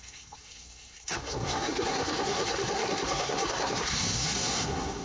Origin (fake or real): fake